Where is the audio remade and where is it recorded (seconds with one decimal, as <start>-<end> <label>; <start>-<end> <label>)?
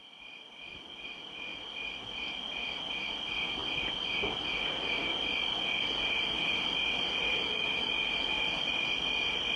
0.0-9.6 recorded